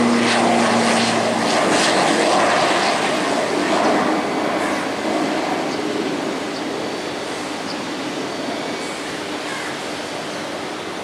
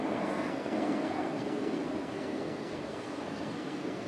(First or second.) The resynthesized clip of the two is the second